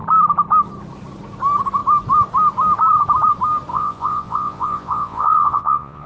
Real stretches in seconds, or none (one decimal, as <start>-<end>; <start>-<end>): 0.0-3.7